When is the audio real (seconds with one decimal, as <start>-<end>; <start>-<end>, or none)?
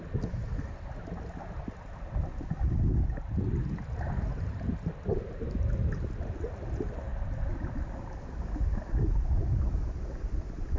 0.0-10.8